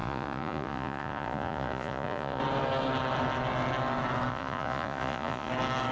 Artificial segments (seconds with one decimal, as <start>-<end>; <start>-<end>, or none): 0.0-2.4; 4.3-5.5